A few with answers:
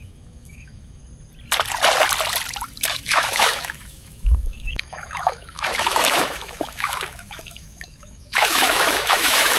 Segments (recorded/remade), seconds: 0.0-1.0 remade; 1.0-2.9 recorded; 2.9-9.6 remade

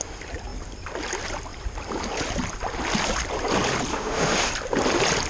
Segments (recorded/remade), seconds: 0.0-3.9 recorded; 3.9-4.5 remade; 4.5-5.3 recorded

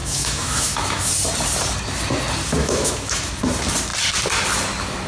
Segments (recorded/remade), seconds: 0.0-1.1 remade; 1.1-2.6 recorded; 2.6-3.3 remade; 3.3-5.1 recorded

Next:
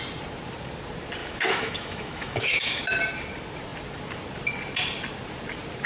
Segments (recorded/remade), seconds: 0.0-1.2 recorded; 1.2-2.9 remade; 2.9-5.9 recorded

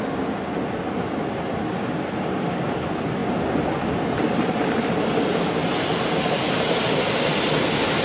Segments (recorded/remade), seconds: 0.0-8.0 recorded

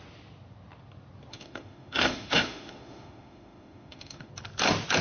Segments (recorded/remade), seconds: 0.0-1.3 recorded; 1.3-4.3 remade; 4.3-5.0 recorded

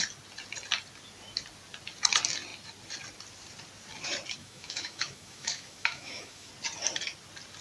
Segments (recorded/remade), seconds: 0.0-4.4 recorded; 4.4-6.5 remade; 6.5-7.6 recorded